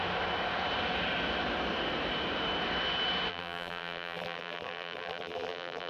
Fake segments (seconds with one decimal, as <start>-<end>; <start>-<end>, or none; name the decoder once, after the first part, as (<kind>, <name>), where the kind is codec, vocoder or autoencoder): 3.3-5.9 (vocoder, BigVGAN v2)